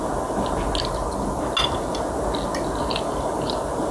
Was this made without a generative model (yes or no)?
yes